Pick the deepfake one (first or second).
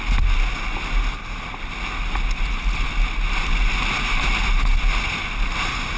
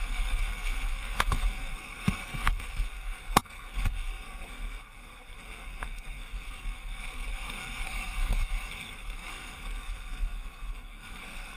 second